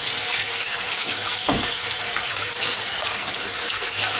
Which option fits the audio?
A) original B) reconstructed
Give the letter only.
B